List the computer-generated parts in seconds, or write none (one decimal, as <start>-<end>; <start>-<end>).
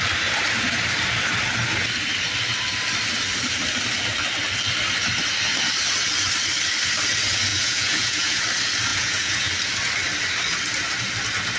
7.5-8.4; 8.9-9.5